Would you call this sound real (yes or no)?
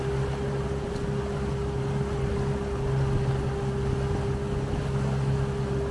yes